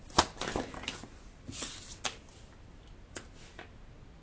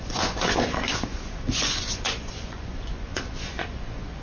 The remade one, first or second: second